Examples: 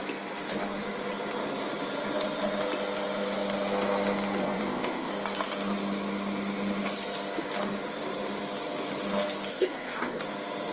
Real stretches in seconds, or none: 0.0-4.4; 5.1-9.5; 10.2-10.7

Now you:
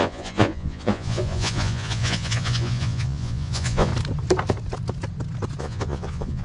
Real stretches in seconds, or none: 3.9-5.6

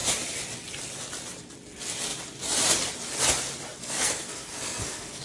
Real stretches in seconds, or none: 0.0-3.8